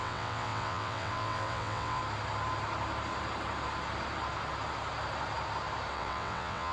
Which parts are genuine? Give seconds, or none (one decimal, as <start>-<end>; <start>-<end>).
2.0-5.9

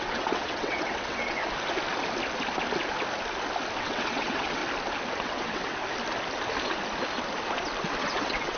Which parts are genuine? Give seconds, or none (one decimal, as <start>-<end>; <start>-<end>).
1.4-3.8; 4.6-5.2; 5.8-8.0

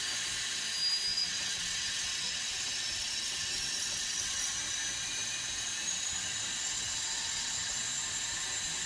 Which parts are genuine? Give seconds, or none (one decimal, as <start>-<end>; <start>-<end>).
0.0-1.1; 4.5-6.6; 7.8-8.9

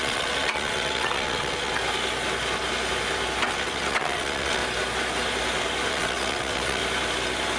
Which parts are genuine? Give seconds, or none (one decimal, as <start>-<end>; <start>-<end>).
1.8-3.5; 4.6-5.9; 6.8-7.6

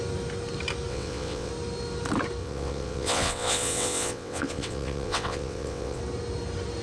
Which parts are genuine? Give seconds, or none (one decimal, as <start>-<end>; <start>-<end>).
0.0-0.9; 1.5-2.4; 6.0-6.8

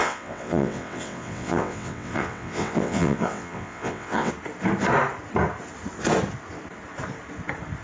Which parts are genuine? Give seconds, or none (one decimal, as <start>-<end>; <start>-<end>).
4.3-7.8

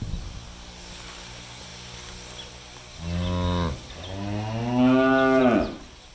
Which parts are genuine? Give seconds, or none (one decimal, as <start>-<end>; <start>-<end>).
0.0-6.1

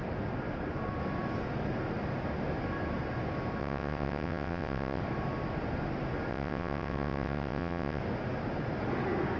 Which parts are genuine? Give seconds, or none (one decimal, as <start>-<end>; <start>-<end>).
0.0-3.6; 5.0-6.3; 8.0-9.4